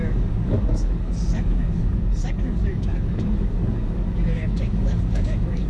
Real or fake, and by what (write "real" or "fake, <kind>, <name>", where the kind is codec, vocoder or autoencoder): fake, codec, DAC